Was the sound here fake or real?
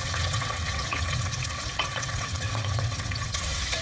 fake